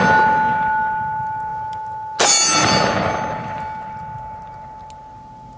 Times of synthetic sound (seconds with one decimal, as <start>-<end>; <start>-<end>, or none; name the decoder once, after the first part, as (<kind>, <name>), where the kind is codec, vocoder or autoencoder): none